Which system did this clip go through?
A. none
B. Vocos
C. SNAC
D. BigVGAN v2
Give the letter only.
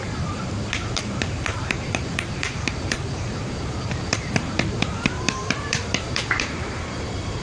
D